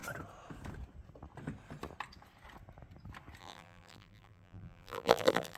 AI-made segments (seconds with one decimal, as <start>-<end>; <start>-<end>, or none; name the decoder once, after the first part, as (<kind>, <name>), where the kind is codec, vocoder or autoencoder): 3.4-5.6 (vocoder, BigVGAN v2)